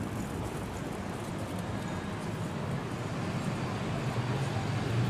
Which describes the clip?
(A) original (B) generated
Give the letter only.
A